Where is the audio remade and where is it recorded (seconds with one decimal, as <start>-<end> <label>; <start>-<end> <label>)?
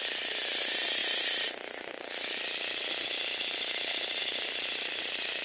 0.0-1.0 remade; 1.0-4.2 recorded; 4.2-5.4 remade